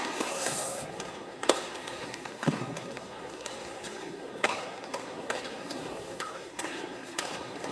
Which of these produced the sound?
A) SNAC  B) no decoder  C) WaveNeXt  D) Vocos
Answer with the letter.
A